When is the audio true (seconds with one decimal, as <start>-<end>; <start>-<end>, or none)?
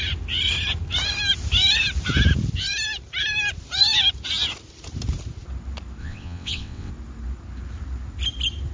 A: 0.0-6.0; 6.9-8.7